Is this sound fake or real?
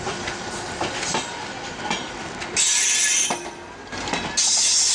real